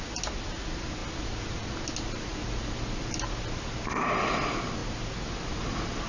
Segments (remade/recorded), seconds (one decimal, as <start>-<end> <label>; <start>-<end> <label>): 0.0-6.1 recorded